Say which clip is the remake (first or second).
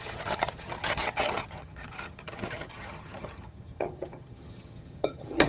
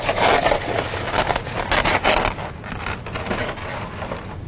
first